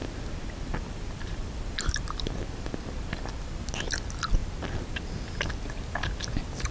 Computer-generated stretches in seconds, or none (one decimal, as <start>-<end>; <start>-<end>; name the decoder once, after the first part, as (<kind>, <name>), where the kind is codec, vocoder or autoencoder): 0.0-3.4 (vocoder, BigVGAN v2)